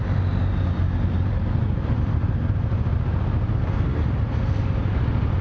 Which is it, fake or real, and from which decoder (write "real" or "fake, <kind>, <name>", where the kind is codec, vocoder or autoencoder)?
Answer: real